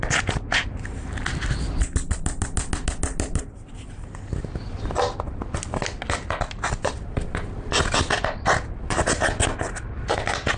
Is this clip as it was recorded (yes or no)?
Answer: yes